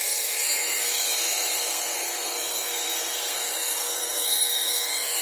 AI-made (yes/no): yes